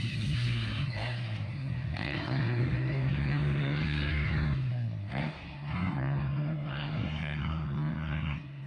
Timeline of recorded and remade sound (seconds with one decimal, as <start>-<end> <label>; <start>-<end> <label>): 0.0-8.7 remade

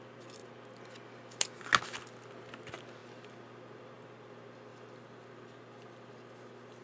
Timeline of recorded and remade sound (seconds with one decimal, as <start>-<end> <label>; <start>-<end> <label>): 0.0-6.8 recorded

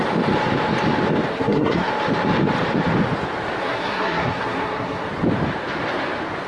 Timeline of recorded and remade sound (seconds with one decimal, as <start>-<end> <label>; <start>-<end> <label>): 0.0-1.3 recorded; 1.3-1.9 remade; 1.9-3.6 recorded; 3.6-5.1 remade; 5.1-6.5 recorded

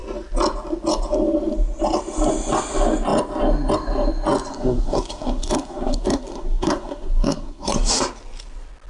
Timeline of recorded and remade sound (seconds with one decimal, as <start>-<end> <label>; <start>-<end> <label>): 0.0-4.5 recorded; 4.5-8.0 remade; 8.0-8.9 recorded